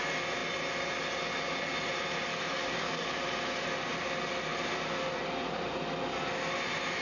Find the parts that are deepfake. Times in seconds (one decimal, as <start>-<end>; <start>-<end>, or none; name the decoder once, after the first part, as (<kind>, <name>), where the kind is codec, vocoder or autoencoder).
2.3-3.1 (codec, DAC)